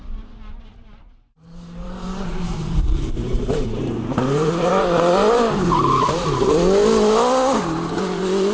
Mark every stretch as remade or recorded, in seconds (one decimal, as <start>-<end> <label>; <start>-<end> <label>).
0.0-1.0 recorded; 1.0-4.7 remade; 4.7-8.5 recorded